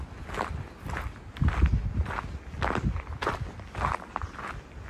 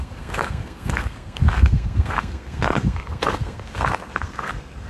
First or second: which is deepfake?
second